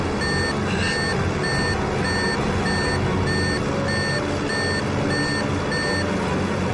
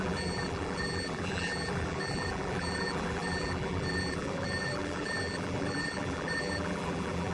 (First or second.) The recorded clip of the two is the first